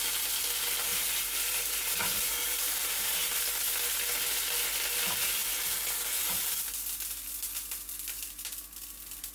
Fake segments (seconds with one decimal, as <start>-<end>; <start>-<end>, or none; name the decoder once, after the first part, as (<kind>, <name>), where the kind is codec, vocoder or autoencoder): 0.9-3.1 (vocoder, BigVGAN v2)